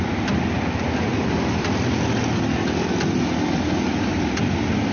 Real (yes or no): yes